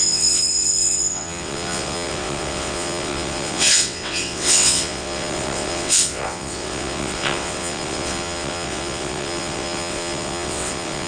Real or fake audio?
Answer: fake